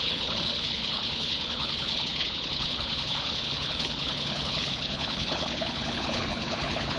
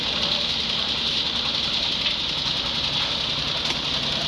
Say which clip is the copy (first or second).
first